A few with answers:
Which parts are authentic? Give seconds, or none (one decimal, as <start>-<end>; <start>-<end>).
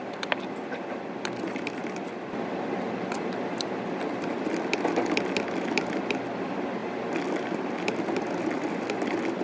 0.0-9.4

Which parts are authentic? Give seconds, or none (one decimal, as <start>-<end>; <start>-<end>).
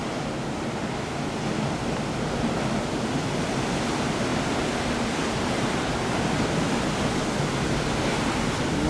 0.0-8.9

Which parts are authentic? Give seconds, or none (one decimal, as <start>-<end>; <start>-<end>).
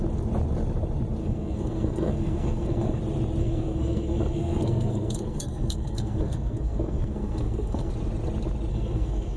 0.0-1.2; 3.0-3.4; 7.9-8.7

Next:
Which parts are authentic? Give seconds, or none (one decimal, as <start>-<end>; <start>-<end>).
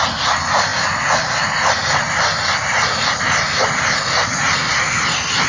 0.0-5.5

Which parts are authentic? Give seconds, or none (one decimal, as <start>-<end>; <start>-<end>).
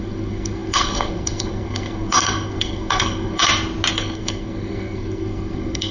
3.4-3.9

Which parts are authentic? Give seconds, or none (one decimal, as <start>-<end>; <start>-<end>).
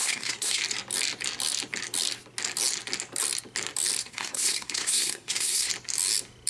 0.6-4.0; 5.7-6.5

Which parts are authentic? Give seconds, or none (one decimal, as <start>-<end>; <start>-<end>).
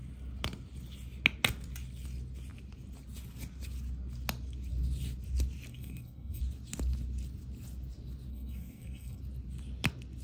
0.0-5.7; 6.4-8.3; 9.2-10.2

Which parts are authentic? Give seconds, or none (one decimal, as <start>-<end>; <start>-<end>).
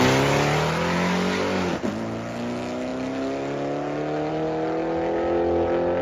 0.0-6.0